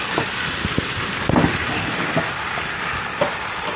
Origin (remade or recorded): recorded